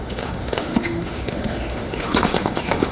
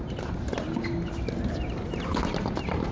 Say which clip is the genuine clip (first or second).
second